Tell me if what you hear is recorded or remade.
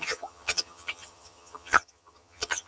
remade